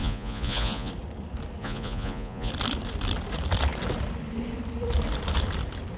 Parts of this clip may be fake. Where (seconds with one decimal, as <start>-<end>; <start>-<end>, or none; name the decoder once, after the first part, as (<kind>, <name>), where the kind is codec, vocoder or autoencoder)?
0.0-0.9 (vocoder, Vocos); 1.6-2.5

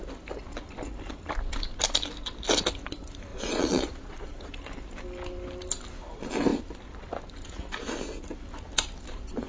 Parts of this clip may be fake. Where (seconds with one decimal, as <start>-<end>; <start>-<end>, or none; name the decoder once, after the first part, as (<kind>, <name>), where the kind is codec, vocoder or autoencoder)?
3.3-4.5 (vocoder, Vocos)

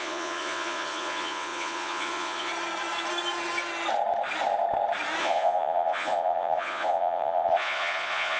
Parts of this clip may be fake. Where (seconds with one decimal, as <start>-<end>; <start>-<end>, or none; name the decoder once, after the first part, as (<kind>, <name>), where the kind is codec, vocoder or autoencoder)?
0.0-2.5 (vocoder, Vocos); 5.2-8.4

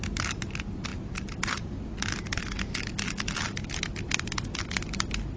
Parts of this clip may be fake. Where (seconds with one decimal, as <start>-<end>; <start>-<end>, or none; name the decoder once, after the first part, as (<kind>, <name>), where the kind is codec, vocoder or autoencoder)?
none